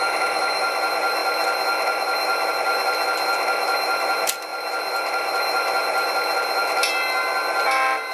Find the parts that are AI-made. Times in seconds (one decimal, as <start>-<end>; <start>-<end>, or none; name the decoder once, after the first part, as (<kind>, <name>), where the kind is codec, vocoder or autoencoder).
none

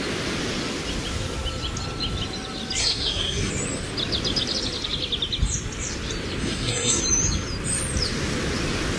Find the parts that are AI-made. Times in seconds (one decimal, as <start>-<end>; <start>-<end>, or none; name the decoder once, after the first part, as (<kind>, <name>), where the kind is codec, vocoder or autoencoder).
2.8-3.5 (codec, SNAC); 6.4-7.0

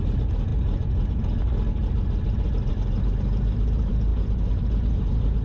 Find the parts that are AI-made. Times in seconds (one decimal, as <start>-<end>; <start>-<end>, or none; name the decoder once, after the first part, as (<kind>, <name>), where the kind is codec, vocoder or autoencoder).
none